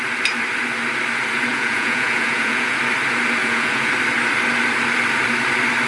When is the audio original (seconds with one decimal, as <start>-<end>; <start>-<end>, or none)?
0.0-1.5; 2.8-3.4; 3.9-5.9